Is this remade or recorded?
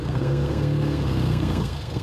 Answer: remade